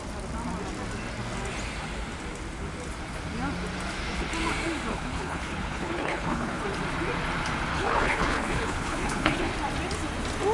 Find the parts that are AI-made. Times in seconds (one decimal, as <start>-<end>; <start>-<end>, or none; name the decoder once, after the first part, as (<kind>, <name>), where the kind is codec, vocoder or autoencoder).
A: 4.9-6.6 (codec, HILCodec); 7.7-9.5